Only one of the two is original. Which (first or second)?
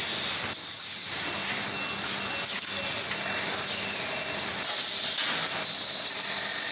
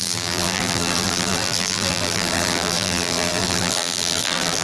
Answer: first